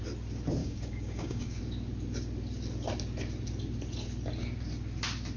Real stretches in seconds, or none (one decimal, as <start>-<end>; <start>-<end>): 0.0-0.6; 1.6-5.4

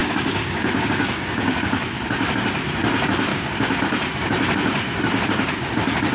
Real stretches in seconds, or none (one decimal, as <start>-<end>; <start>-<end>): 1.8-3.3; 3.8-6.1

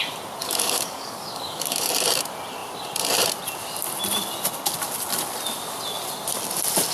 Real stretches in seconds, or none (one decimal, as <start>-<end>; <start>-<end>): 0.0-0.4; 1.9-6.9

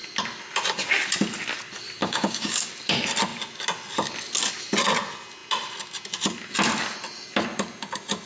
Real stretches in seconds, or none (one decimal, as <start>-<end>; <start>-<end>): 0.0-2.0; 2.7-8.3

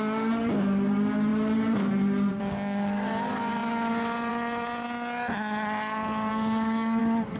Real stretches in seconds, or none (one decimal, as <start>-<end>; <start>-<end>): 0.0-2.3; 3.1-6.3; 7.0-7.4

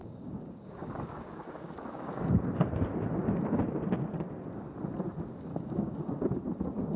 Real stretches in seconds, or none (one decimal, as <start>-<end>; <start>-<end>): 2.4-5.5; 6.2-7.0